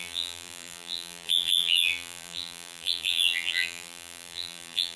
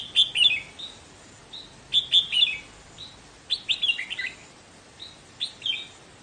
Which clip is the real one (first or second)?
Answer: second